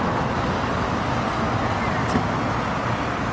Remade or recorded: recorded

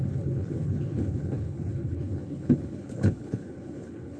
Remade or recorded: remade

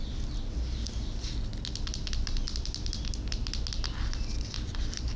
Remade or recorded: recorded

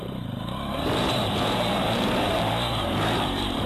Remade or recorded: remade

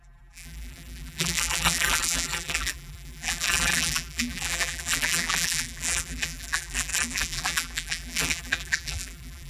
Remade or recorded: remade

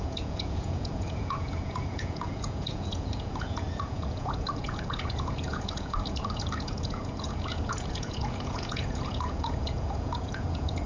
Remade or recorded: remade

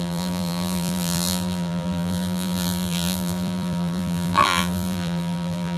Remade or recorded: remade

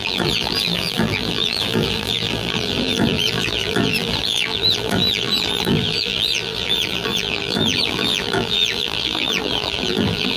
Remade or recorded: remade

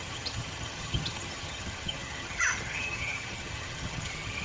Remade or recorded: remade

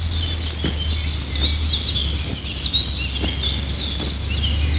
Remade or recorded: recorded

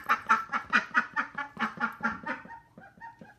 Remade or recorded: recorded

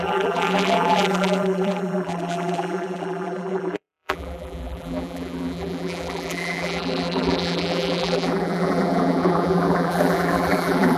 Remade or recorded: remade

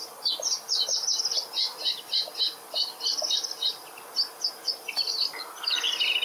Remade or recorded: recorded